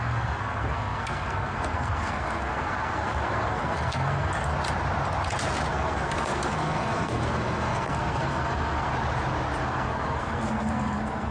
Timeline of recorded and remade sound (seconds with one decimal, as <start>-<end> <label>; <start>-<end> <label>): 0.0-4.5 remade; 4.5-5.7 recorded; 5.7-8.9 remade; 8.9-9.6 recorded; 9.6-11.3 remade